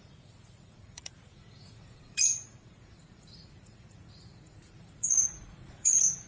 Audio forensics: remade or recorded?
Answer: remade